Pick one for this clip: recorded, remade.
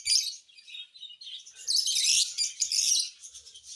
recorded